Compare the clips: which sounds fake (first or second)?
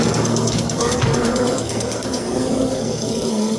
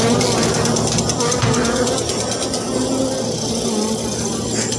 first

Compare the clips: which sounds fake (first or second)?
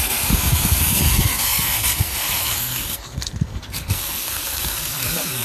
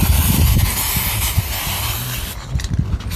first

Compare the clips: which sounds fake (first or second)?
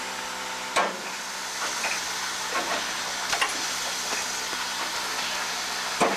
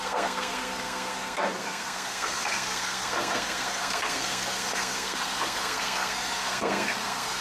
second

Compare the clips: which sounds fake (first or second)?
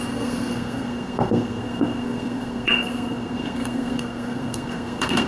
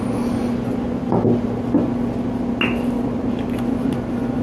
first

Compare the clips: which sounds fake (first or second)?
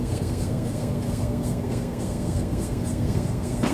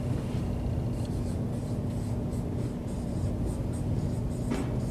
first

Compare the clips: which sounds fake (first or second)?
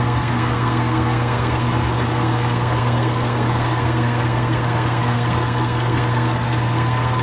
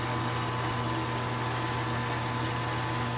first